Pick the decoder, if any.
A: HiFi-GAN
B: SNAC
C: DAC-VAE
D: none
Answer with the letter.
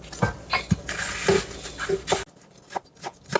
D